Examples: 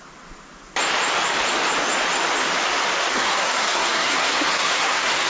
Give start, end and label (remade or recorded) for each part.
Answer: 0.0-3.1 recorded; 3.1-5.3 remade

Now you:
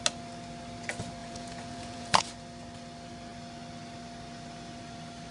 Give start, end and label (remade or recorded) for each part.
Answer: 0.0-1.2 recorded; 1.2-2.2 remade; 2.2-5.3 recorded

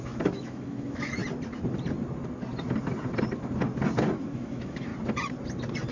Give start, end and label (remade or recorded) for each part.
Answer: 0.0-1.2 remade; 1.2-4.2 recorded; 4.2-4.9 remade; 4.9-5.9 recorded

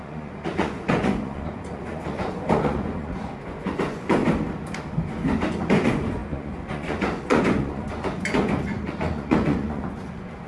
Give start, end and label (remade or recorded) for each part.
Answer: 0.0-4.2 remade; 4.2-5.5 recorded; 5.5-10.5 remade

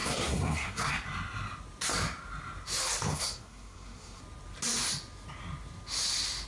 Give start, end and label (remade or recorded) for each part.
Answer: 0.0-0.9 remade; 0.9-3.1 recorded; 3.1-4.2 remade; 4.2-6.5 recorded

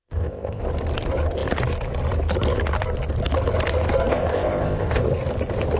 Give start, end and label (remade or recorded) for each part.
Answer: 0.0-0.6 remade; 0.6-4.1 recorded; 4.1-5.0 remade; 5.0-5.8 recorded

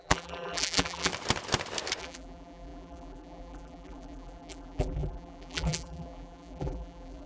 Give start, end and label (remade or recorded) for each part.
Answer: 0.0-1.1 remade; 1.1-2.0 recorded; 2.0-7.3 remade